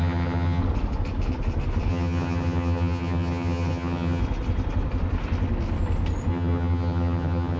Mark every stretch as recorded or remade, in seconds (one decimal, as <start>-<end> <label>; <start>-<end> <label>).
0.0-0.6 remade; 0.6-1.9 recorded; 1.9-4.2 remade; 4.2-6.3 recorded; 6.3-7.6 remade